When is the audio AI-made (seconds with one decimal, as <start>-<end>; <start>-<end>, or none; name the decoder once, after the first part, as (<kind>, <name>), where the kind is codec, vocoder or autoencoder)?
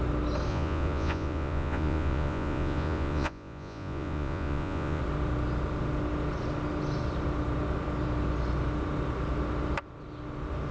0.5-5.0 (vocoder, Vocos)